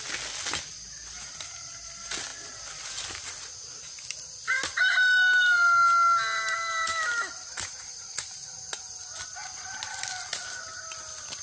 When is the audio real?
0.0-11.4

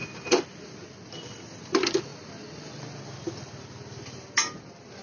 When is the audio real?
0.0-5.0

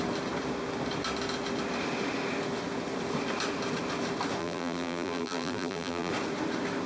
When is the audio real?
0.0-4.4; 6.1-6.9